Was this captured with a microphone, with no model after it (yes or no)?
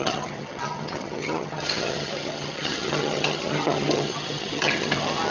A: no